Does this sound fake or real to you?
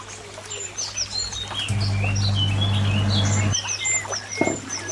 real